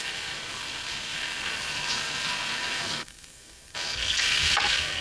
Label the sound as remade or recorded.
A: remade